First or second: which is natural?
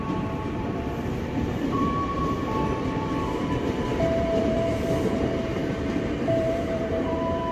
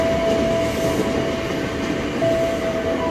second